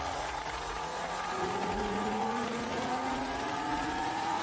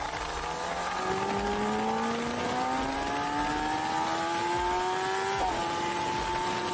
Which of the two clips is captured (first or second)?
second